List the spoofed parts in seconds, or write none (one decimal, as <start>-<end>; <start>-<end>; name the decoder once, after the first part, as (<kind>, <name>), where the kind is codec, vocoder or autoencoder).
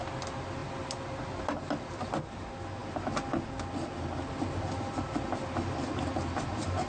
0.6-1.3 (vocoder, BigVGAN v2)